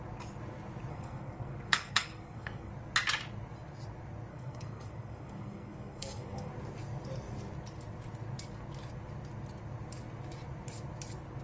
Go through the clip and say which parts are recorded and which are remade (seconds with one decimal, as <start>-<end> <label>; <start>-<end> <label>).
0.0-0.9 recorded; 0.9-2.7 remade; 2.7-4.3 recorded; 4.3-6.5 remade; 6.5-11.4 recorded